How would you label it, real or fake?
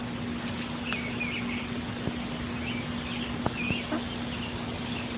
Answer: real